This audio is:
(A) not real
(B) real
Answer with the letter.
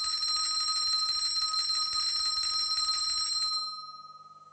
B